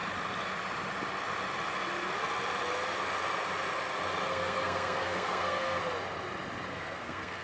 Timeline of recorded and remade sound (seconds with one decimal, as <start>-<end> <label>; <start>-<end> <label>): 0.0-4.3 recorded; 4.3-5.8 remade; 5.8-6.7 recorded; 6.7-7.4 remade